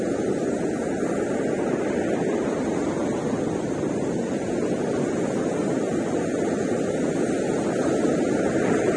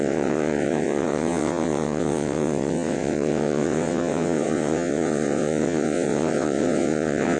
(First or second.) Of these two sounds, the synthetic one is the second